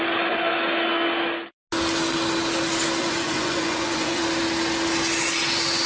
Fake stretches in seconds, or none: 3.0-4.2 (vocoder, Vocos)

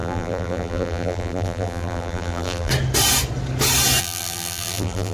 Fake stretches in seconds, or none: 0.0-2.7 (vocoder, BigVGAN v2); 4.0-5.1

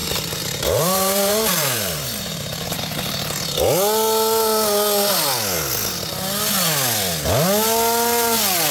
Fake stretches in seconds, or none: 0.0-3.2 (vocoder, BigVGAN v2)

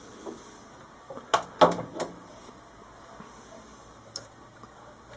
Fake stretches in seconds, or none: none

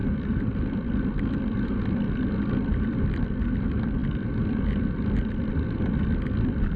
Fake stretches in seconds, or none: none

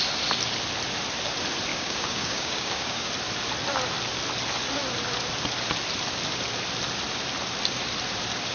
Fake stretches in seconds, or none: 1.7-3.1 (codec, DAC)

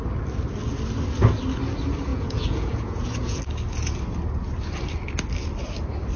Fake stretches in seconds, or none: 2.1-3.4 (vocoder, Vocos)

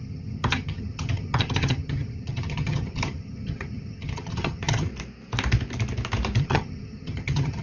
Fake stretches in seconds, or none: 0.0-4.9 (vocoder, HiFi-GAN); 6.4-7.6